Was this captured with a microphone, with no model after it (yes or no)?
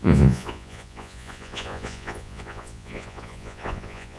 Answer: no